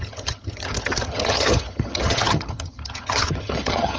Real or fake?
fake